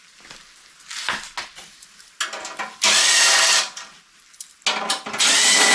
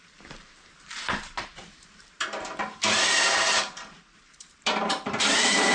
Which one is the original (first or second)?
first